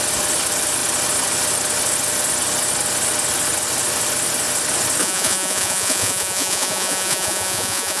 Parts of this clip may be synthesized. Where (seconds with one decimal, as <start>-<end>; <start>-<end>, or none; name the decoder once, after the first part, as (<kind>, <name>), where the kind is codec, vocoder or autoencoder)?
5.0-8.0 (vocoder, Vocos)